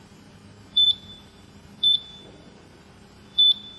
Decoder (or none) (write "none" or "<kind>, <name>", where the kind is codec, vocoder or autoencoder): vocoder, BigVGAN v2